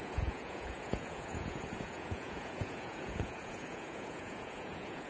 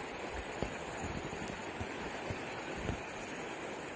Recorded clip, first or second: second